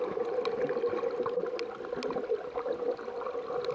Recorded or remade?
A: recorded